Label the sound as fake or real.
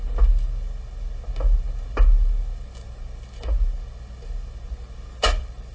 real